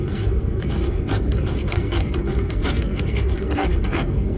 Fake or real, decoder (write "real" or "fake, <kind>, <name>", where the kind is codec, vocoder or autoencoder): fake, codec, SNAC